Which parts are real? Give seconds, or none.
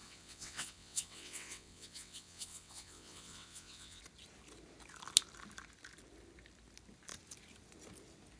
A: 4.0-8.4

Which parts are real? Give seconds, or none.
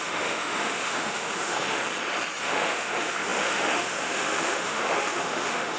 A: 1.8-2.4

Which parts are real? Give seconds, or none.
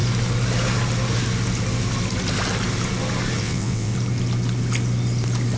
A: 0.0-3.4; 3.9-5.6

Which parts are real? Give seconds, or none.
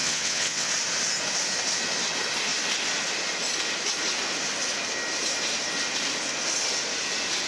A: 0.7-7.5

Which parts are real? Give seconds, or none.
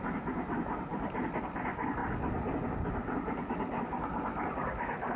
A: 0.0-5.2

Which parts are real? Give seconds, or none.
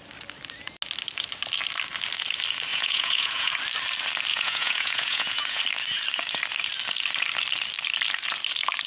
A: 0.0-2.7; 3.5-4.3; 5.6-8.9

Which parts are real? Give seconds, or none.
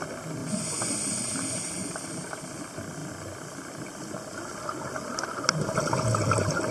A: 0.0-0.4; 1.0-6.7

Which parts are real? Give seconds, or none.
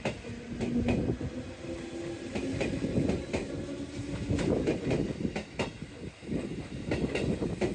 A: 0.0-7.7